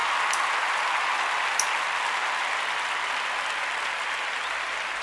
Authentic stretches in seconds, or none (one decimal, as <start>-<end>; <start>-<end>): 0.0-5.0